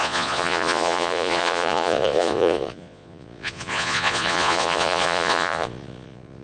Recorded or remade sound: remade